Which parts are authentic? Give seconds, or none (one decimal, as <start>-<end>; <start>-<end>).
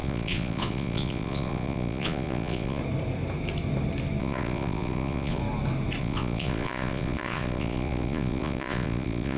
2.8-4.2; 5.4-6.0